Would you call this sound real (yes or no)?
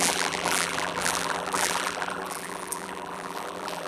no